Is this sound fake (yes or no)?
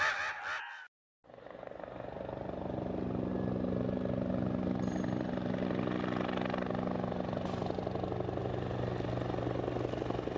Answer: no